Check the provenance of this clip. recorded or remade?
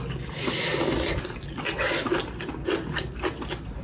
recorded